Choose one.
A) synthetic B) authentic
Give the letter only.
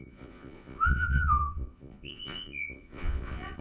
A